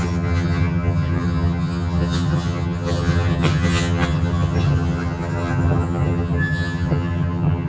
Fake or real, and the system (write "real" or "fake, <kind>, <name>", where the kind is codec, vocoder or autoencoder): fake, vocoder, HiFi-GAN